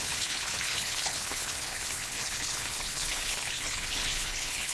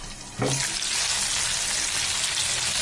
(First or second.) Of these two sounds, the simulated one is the first